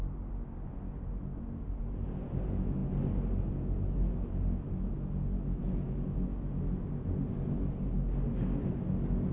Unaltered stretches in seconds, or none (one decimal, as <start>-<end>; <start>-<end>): 0.0-9.3